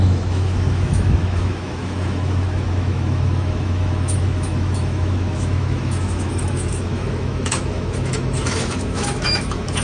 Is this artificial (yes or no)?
yes